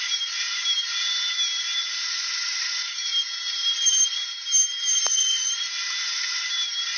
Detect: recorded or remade remade